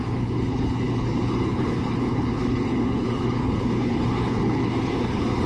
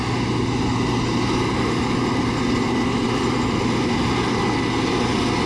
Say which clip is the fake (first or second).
first